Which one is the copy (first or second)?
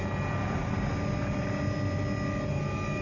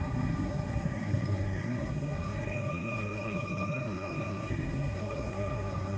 second